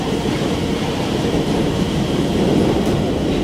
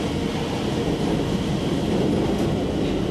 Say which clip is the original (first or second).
second